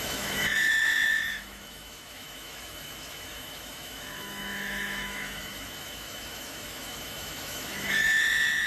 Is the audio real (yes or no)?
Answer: no